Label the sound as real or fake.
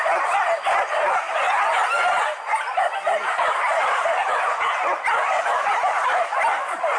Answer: real